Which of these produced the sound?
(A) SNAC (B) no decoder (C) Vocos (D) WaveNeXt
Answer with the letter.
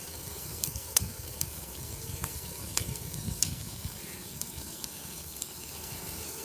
A